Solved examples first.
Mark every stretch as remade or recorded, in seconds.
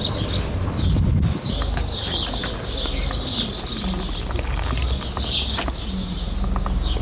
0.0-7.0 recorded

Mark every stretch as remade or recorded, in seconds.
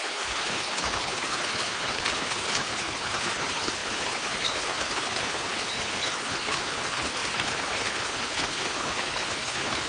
0.0-9.9 remade